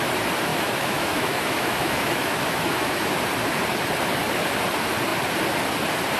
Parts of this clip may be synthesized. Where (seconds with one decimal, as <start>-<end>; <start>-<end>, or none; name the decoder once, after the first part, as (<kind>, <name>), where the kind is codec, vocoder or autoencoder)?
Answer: 0.5-3.1 (autoencoder, DAC-VAE)